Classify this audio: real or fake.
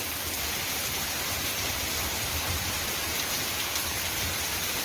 fake